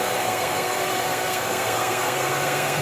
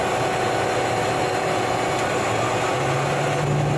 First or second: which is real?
second